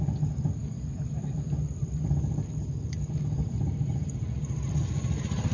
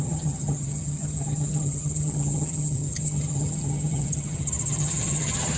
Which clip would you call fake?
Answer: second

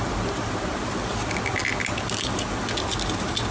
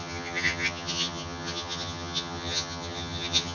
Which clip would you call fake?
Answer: second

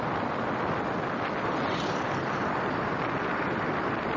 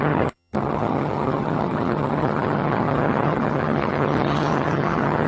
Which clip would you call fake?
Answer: second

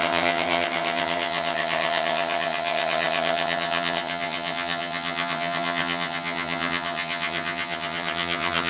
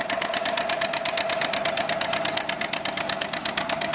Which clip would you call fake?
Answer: first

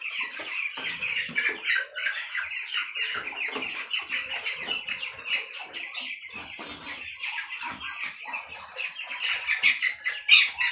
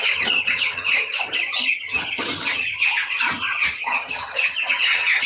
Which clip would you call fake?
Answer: second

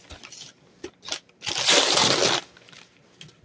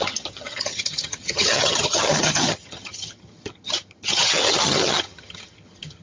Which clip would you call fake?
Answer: second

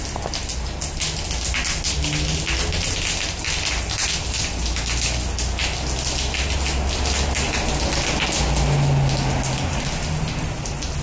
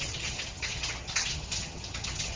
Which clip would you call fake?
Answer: second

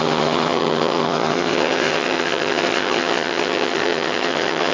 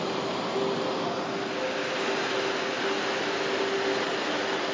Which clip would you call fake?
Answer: first